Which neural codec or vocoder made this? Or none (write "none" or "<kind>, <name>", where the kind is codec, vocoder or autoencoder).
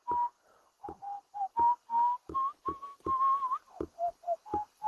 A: none